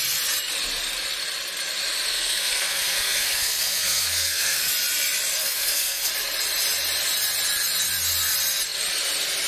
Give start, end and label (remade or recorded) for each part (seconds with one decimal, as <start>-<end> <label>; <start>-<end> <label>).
0.0-2.1 recorded; 2.1-4.7 remade; 4.7-5.4 recorded; 5.4-6.1 remade; 6.1-9.5 recorded